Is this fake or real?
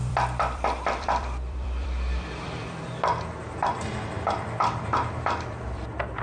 fake